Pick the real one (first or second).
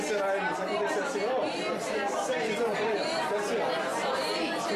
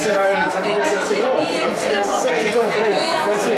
first